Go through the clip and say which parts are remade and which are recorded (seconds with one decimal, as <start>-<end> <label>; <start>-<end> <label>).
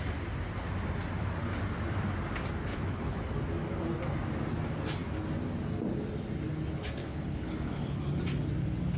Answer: 0.0-2.7 recorded; 2.7-3.2 remade; 3.2-7.0 recorded; 7.0-8.2 remade; 8.2-9.0 recorded